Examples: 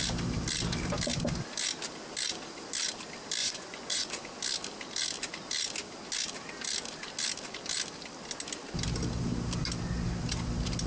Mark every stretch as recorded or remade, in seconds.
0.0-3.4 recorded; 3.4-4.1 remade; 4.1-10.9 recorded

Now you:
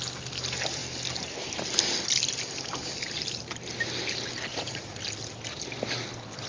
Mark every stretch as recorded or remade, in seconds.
0.0-4.5 recorded; 4.5-5.0 remade; 5.0-6.5 recorded